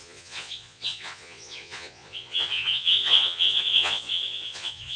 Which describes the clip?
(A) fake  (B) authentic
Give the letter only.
A